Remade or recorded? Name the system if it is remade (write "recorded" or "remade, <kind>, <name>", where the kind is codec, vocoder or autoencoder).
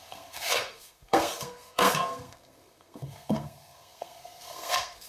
remade, codec, SNAC